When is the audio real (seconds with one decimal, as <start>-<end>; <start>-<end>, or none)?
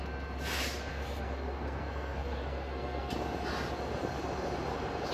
0.0-0.9; 3.1-5.1